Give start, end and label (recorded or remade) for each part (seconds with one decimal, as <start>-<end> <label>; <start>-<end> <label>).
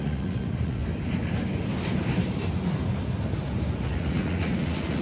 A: 0.0-0.8 remade; 0.8-3.8 recorded; 3.8-5.0 remade